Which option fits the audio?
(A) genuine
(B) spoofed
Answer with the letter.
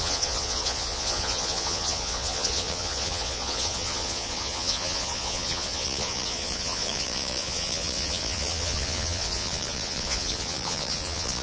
B